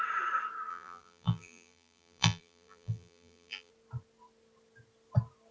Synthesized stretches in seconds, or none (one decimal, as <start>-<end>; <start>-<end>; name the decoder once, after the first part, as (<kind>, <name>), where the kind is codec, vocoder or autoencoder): 0.7-3.7 (vocoder, BigVGAN v2)